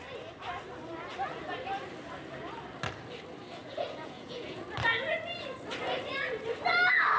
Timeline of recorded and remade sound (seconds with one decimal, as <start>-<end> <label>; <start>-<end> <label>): 0.0-3.6 recorded; 3.6-4.6 remade; 4.6-7.2 recorded

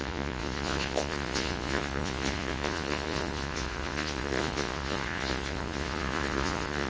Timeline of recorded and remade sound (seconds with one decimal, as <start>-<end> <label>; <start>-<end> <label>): 0.0-6.9 remade

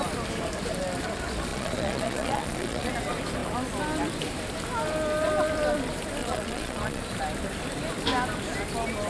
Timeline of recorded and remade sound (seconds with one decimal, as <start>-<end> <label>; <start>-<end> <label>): 0.0-1.5 recorded; 1.5-2.9 remade; 2.9-6.2 recorded; 6.2-7.0 remade; 7.0-9.1 recorded

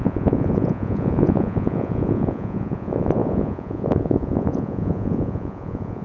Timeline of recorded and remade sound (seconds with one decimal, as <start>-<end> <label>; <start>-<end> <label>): 0.0-6.0 remade

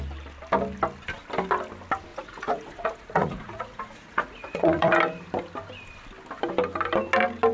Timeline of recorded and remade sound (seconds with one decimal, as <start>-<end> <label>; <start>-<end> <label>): 0.0-2.1 recorded; 2.1-4.9 remade; 4.9-7.5 recorded